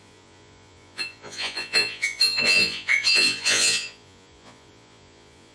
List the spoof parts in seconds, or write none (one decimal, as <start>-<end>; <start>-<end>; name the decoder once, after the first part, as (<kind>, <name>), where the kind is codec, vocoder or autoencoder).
0.0-5.5 (vocoder, Vocos)